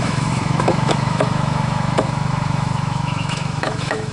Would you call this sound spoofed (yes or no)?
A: yes